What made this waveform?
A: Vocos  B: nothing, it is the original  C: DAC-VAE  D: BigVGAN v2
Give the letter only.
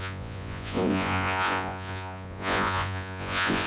A